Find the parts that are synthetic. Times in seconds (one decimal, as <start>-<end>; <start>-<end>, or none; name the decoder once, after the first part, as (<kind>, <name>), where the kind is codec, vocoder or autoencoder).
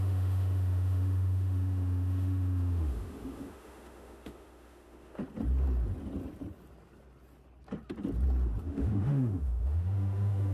0.0-5.2 (autoencoder, DAC-VAE); 8.6-10.5